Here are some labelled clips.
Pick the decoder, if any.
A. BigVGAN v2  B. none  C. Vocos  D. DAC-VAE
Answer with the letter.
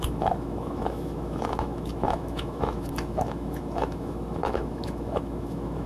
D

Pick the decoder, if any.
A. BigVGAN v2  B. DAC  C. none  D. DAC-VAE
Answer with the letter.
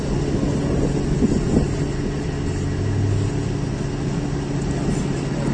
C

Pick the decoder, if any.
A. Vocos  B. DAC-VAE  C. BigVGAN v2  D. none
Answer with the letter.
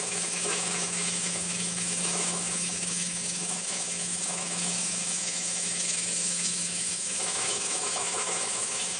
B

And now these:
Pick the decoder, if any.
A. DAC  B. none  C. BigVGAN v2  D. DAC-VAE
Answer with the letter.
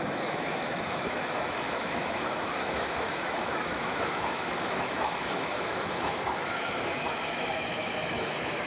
D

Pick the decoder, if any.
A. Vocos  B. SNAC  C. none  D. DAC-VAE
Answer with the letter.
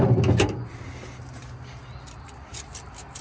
C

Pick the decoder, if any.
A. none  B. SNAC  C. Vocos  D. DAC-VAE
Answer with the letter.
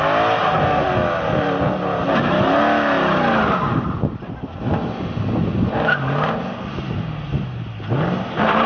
A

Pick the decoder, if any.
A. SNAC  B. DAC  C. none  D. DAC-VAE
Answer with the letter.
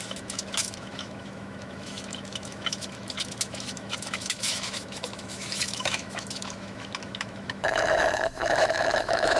D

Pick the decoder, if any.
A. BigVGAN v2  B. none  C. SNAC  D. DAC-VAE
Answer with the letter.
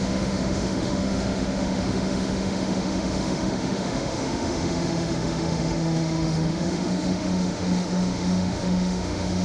D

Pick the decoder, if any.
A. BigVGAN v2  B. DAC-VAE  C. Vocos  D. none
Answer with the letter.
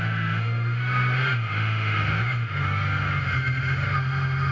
B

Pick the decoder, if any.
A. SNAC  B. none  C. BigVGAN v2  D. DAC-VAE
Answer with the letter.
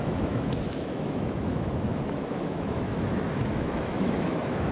D